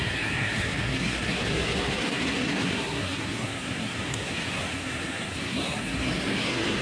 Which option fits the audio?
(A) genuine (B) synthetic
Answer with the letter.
B